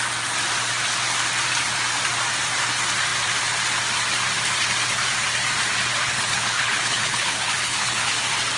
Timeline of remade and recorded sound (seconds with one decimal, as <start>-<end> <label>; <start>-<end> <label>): 0.0-6.0 recorded; 6.0-8.1 remade; 8.1-8.6 recorded